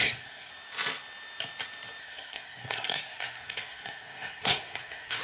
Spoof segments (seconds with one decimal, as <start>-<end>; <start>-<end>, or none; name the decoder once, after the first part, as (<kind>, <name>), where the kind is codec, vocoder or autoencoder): 0.0-0.5 (codec, SNAC); 2.0-5.2